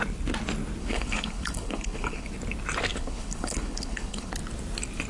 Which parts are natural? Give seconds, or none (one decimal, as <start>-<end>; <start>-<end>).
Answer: 0.0-0.8; 2.3-2.9; 4.3-5.1